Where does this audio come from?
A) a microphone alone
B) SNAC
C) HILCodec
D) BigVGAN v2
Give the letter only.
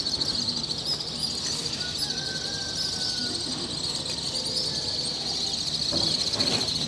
A